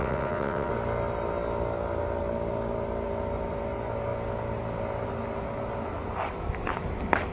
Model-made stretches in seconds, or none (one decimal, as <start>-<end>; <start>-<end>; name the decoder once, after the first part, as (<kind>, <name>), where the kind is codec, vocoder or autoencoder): 0.0-0.7 (vocoder, WaveNeXt)